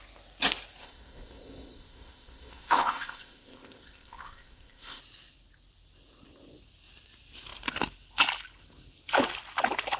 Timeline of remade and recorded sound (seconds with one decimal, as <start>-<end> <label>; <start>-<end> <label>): 0.0-0.8 recorded; 0.8-5.0 remade; 5.0-10.0 recorded